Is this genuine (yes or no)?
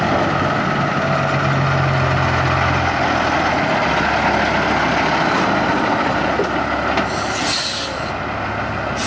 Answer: yes